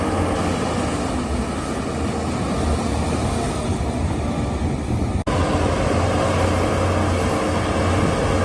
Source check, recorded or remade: recorded